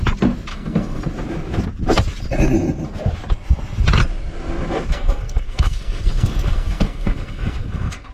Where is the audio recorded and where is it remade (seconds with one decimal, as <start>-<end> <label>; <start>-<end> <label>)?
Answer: 0.0-0.5 recorded; 0.5-1.0 remade; 1.0-4.9 recorded; 4.9-8.1 remade